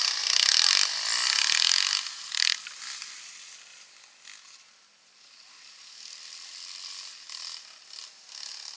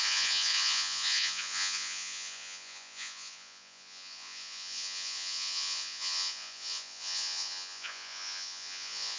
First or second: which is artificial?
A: second